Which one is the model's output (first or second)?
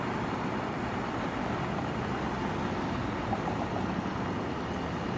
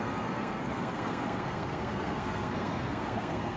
second